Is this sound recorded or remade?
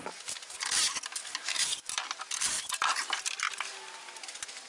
recorded